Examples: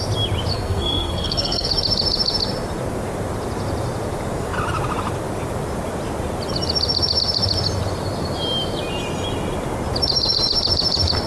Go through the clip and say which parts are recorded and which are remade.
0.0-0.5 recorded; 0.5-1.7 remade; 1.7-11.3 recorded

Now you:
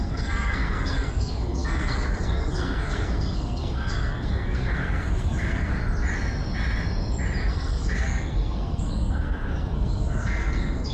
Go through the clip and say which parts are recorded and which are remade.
0.0-5.8 remade; 5.8-7.5 recorded; 7.5-10.9 remade

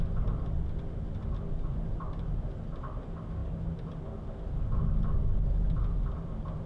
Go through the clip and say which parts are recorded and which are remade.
0.0-6.7 recorded

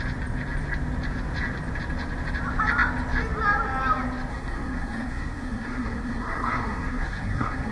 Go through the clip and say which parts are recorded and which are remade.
0.0-4.3 recorded; 4.3-7.7 remade

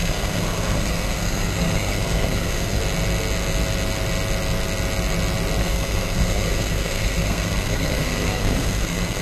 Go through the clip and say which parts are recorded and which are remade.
0.0-2.8 remade; 2.8-5.6 recorded; 5.6-9.2 remade

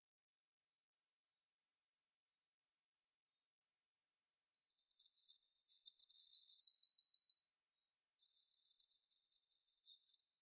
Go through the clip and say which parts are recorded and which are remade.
0.0-4.7 recorded; 4.7-6.6 remade; 6.6-8.2 recorded; 8.2-10.4 remade

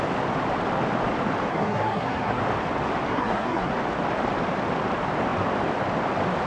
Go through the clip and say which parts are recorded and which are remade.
0.0-1.5 recorded; 1.5-2.4 remade; 2.4-3.1 recorded; 3.1-3.7 remade; 3.7-6.5 recorded

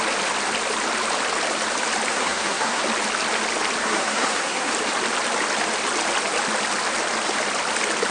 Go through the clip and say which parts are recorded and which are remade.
0.0-2.1 recorded; 2.1-2.8 remade; 2.8-3.8 recorded; 3.8-4.7 remade; 4.7-8.1 recorded